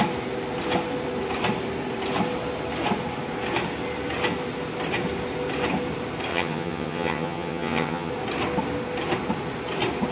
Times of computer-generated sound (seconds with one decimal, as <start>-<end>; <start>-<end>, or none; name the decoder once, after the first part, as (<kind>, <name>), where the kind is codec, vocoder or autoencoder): 6.3-8.1 (vocoder, HiFi-GAN)